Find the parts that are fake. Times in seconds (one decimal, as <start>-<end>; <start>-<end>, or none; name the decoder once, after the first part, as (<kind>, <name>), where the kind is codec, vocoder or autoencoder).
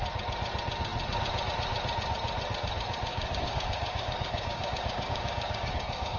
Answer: 3.1-6.2 (codec, DAC)